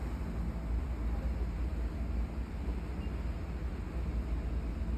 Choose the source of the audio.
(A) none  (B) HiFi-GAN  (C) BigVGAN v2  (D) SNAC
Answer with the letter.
A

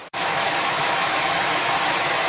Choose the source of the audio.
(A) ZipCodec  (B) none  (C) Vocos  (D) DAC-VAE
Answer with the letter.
D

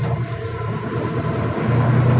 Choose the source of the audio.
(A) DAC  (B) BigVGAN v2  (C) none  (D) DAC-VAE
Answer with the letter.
C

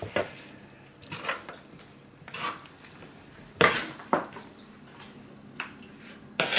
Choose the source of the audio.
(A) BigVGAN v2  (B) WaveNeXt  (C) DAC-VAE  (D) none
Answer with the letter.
D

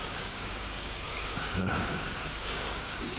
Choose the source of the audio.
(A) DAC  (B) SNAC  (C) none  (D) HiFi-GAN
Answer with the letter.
A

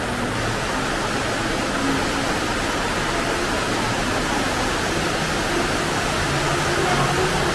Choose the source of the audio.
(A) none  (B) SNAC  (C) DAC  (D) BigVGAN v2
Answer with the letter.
A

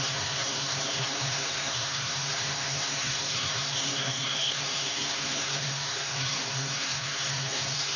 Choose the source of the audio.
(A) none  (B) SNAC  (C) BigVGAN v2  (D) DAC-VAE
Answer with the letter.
B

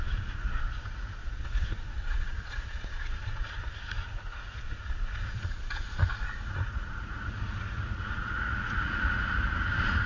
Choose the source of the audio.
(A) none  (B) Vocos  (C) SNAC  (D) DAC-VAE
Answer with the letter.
B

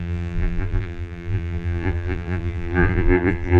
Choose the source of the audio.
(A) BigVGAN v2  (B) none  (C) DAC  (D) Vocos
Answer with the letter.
A